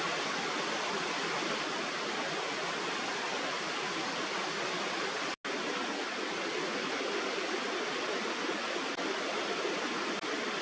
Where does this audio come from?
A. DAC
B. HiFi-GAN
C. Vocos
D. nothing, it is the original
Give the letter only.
D